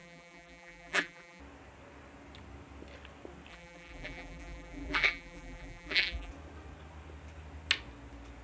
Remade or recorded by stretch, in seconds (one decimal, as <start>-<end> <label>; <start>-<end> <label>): 0.0-1.4 remade; 1.4-3.5 recorded; 3.5-6.3 remade; 6.3-8.4 recorded